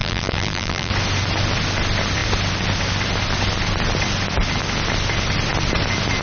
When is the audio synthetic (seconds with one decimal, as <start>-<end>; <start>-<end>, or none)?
0.0-0.9